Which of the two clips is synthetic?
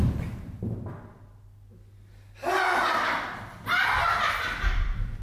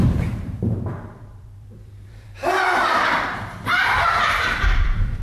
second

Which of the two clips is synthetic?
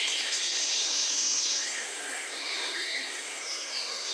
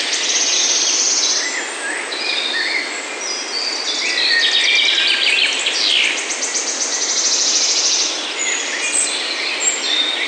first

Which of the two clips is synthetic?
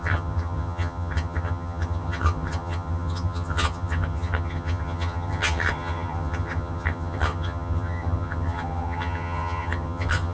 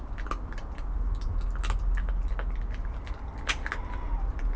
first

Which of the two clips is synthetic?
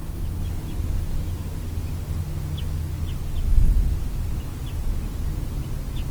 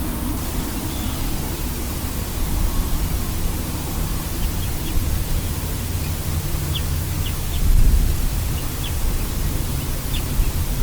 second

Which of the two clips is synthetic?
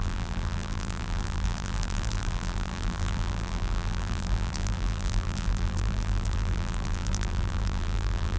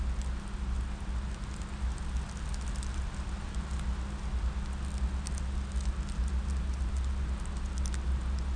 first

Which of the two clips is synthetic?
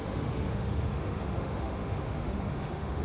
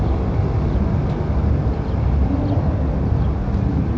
first